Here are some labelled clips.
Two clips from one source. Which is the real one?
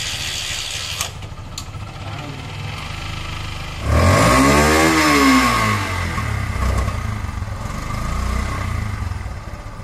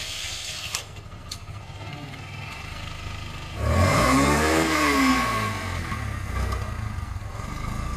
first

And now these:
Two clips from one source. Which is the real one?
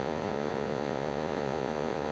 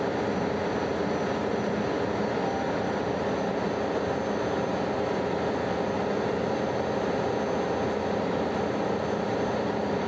second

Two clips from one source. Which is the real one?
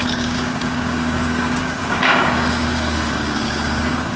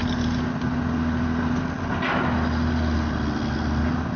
second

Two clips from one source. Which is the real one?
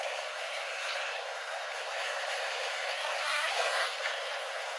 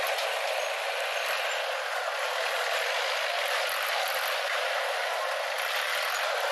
second